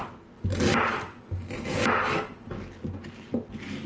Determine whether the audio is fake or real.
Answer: real